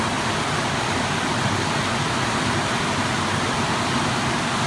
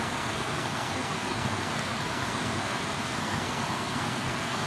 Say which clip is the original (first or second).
first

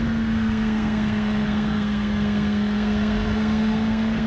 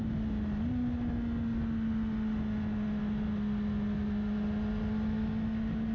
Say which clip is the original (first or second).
second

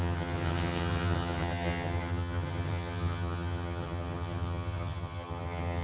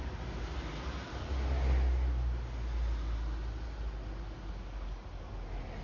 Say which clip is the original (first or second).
second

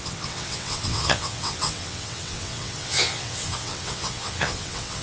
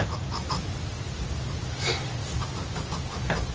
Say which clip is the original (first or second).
second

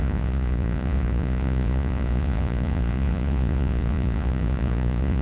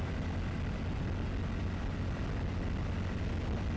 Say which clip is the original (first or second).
second